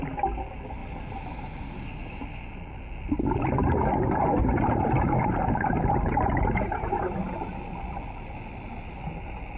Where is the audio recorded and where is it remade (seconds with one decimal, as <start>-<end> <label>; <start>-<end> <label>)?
0.0-4.4 recorded; 4.4-7.2 remade; 7.2-9.6 recorded